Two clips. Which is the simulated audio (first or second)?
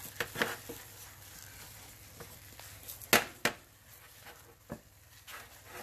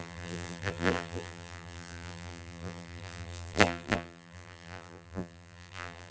second